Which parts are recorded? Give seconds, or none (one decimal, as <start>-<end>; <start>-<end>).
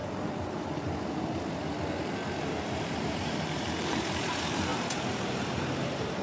0.0-2.4